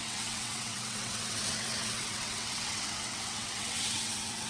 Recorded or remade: remade